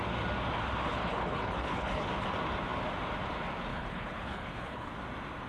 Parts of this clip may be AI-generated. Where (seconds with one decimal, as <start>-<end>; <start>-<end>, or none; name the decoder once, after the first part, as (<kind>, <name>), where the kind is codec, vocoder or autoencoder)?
0.9-2.1 (codec, HILCodec); 3.7-4.9

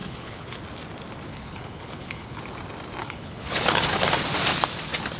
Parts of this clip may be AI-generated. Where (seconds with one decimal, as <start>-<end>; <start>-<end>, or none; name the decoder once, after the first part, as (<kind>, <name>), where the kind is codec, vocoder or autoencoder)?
0.0-0.6 (codec, HILCodec); 1.3-2.4; 3.0-3.8